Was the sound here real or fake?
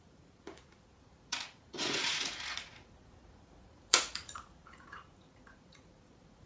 fake